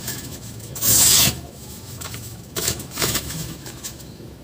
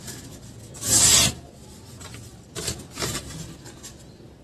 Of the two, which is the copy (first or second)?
first